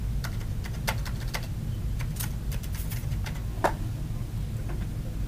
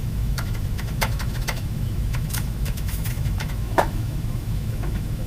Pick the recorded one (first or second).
first